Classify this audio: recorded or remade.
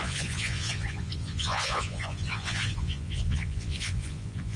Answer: remade